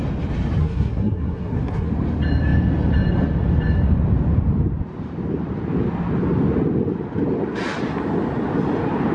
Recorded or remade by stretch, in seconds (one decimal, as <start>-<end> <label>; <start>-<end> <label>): 0.0-0.6 recorded; 0.6-1.9 remade; 1.9-9.1 recorded